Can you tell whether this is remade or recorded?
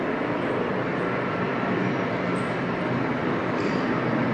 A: remade